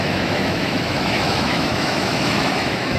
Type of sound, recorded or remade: remade